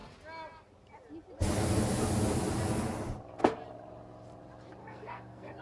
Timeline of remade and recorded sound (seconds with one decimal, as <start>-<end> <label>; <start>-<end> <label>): 0.0-4.8 recorded; 4.8-5.6 remade